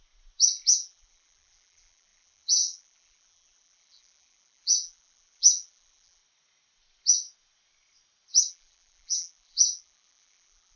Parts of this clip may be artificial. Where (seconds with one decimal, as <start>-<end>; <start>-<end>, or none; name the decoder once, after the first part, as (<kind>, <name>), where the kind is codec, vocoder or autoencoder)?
0.7-6.2 (vocoder, BigVGAN v2); 8.5-10.8